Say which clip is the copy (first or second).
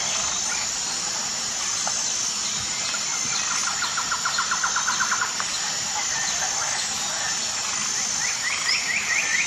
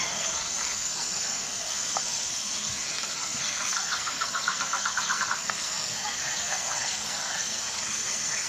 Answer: second